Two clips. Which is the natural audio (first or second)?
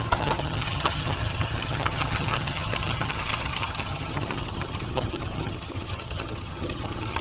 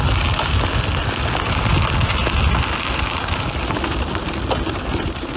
second